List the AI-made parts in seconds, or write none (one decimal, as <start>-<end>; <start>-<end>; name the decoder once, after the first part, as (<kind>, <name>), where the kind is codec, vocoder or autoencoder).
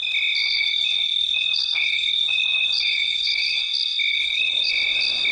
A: 0.4-3.6 (codec, HILCodec); 4.1-4.7